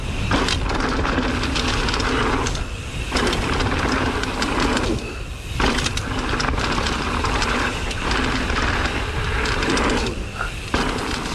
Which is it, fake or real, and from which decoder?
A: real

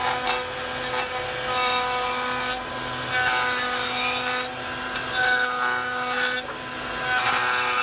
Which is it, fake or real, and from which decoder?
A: real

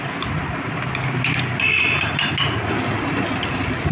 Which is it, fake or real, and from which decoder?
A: real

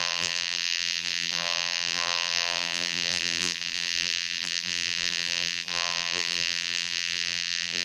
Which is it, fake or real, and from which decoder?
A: fake, vocoder, BigVGAN v2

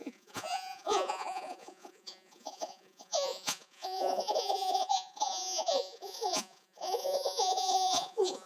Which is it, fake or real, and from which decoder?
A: fake, vocoder, Vocos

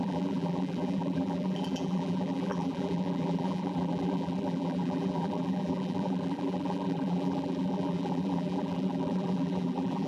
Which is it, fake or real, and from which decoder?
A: fake, vocoder, BigVGAN v2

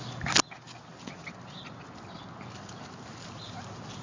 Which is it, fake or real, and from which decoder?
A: real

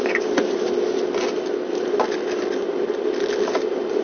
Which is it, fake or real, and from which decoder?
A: real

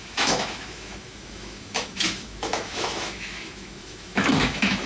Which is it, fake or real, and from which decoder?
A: fake, autoencoder, DAC-VAE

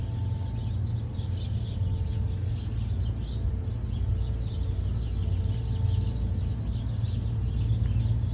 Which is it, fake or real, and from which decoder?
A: real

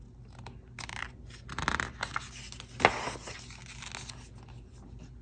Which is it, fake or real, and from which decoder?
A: real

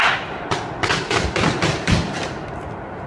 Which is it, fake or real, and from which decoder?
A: real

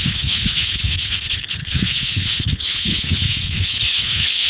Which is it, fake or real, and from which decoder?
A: fake, codec, HILCodec